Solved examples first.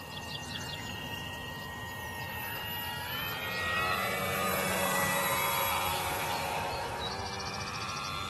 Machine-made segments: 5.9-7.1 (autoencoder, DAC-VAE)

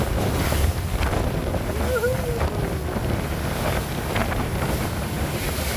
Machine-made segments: none

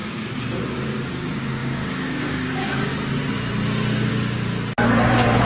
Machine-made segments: 0.8-2.9 (codec, DAC); 4.1-4.5